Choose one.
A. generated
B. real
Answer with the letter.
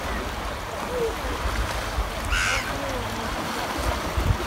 B